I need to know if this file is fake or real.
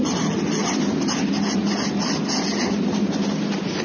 real